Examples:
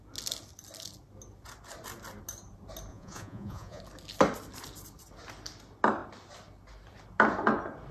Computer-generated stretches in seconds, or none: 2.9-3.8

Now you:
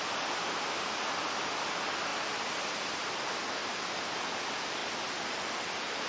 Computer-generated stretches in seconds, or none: 2.1-3.4; 4.8-6.1

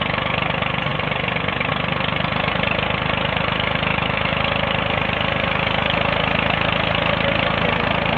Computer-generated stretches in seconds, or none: 3.9-4.4